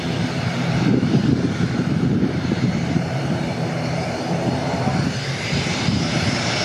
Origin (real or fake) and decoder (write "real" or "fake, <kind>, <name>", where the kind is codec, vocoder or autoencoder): fake, vocoder, BigVGAN v2